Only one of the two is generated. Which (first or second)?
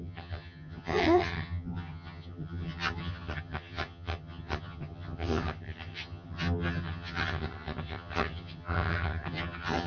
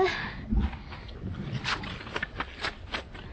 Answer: first